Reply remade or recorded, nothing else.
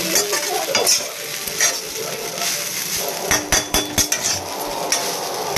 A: recorded